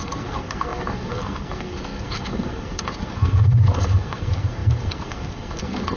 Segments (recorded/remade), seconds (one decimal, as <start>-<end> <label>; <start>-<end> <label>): 0.0-6.0 remade